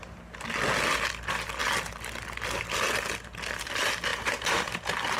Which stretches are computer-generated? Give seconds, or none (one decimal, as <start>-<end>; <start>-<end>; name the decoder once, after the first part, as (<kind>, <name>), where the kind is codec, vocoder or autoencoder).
4.1-4.8 (vocoder, BigVGAN v2)